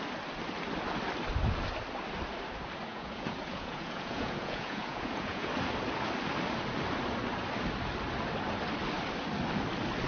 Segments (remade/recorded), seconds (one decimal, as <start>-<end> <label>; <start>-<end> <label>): 0.0-2.9 recorded; 2.9-5.5 remade; 5.5-10.1 recorded